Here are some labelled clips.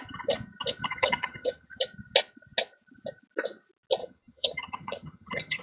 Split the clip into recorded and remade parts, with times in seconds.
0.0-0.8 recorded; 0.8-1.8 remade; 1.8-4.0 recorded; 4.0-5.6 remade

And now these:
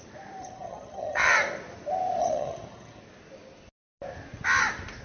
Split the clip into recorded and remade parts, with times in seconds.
0.0-0.4 recorded; 0.4-1.3 remade; 1.3-2.2 recorded; 2.2-3.0 remade; 3.0-5.0 recorded